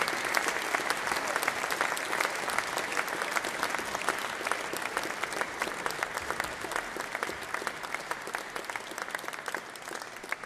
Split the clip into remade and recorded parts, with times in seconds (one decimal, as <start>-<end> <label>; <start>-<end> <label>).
0.0-10.5 recorded